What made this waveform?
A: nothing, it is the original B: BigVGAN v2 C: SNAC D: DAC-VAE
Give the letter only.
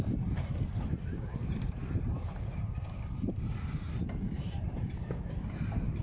B